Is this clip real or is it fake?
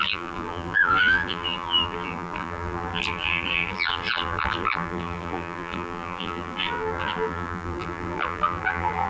fake